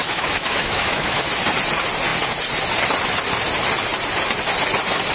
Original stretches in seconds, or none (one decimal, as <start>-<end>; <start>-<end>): 1.2-5.1